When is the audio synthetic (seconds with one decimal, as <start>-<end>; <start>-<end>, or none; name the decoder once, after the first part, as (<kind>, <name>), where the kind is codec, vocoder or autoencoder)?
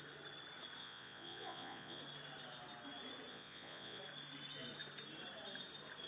0.8-2.0 (vocoder, Vocos); 3.3-4.0